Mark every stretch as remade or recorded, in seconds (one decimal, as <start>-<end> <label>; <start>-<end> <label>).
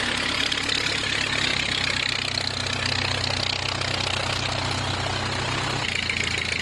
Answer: 0.0-6.6 recorded